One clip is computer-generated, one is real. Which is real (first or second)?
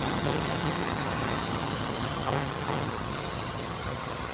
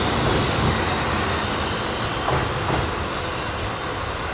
second